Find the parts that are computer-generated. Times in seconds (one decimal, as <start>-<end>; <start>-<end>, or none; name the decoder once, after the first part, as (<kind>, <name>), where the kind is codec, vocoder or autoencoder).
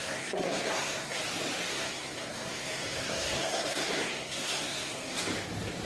0.0-1.2 (codec, SNAC); 1.7-5.2